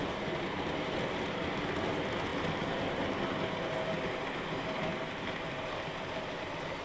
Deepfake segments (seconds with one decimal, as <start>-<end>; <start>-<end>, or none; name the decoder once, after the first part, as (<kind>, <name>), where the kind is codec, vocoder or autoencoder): none